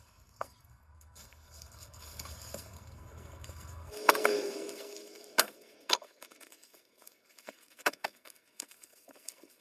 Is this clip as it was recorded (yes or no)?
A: no